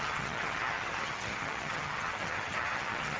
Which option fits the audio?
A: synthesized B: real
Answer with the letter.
A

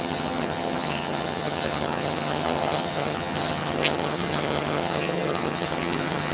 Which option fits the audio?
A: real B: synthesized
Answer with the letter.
B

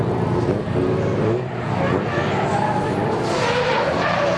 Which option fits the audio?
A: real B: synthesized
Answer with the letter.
A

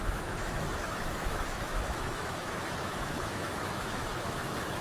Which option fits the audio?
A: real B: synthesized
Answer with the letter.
B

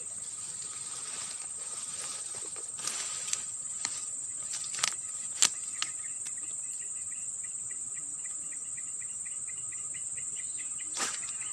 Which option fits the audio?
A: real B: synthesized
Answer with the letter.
A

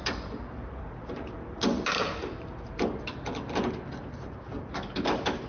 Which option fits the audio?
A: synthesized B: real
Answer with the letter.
B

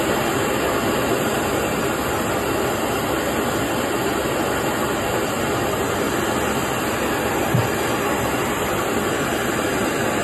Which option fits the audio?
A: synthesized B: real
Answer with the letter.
B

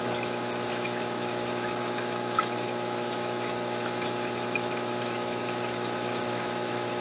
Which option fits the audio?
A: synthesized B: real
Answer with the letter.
A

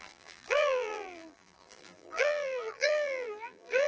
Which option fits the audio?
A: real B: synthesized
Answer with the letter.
B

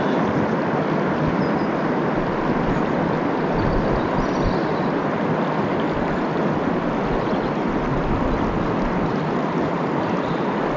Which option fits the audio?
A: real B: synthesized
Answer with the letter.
A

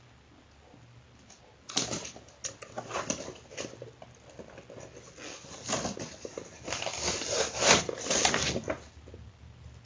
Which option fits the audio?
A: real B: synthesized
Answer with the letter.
A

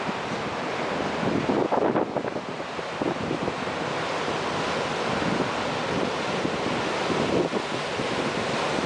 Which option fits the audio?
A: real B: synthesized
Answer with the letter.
A